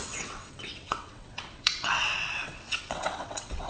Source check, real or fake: fake